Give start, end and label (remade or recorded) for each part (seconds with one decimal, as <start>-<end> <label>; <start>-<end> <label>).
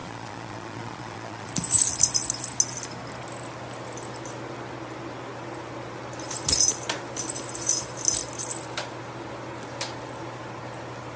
0.0-1.5 remade; 1.5-11.2 recorded